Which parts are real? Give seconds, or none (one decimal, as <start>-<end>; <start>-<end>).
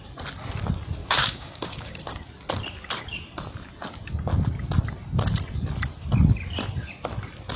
0.0-1.0; 2.1-7.6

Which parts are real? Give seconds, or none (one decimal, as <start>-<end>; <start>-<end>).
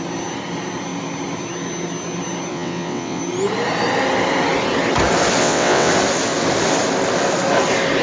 0.0-2.5; 3.2-5.4; 5.9-8.0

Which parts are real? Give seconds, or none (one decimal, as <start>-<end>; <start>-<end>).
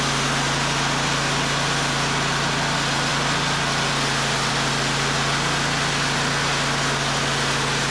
0.0-7.9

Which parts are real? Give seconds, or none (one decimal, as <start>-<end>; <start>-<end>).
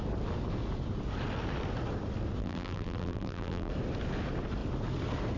0.0-2.4; 3.7-5.4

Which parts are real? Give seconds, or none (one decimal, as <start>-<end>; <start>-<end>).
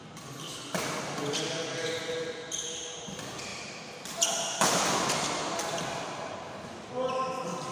0.0-7.7